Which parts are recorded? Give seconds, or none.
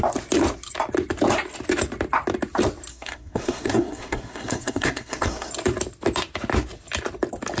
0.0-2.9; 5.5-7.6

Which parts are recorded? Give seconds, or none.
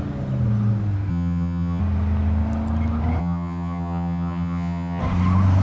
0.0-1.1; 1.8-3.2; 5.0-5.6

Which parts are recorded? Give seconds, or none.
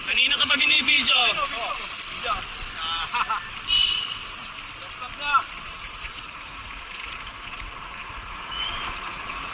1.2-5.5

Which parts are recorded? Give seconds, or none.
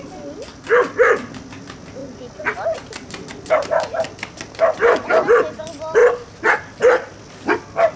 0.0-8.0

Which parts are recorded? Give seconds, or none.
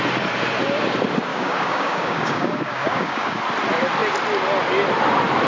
0.0-1.3; 3.4-5.5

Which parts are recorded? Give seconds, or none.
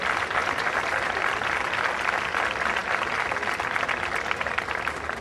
0.0-5.2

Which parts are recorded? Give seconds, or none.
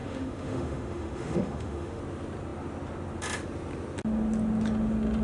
2.0-5.2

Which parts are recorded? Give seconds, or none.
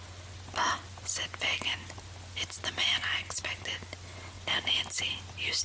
0.0-5.6